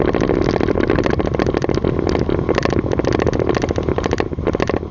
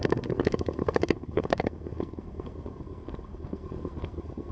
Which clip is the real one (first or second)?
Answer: first